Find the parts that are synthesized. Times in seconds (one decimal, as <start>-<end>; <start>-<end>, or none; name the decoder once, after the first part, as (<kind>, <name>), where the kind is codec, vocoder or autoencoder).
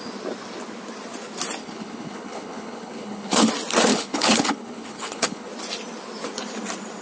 1.6-3.5 (codec, HILCodec); 3.9-5.5